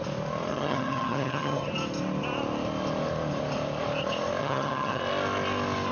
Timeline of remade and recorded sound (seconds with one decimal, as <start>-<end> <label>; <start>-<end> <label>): 0.0-0.5 recorded; 0.5-1.7 remade; 1.7-4.4 recorded; 4.4-5.0 remade; 5.0-5.9 recorded